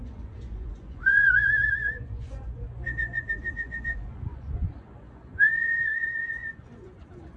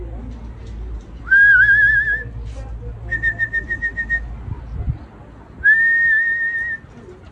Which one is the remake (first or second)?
first